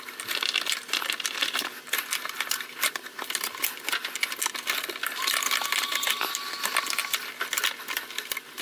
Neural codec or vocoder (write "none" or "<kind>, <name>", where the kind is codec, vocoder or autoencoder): none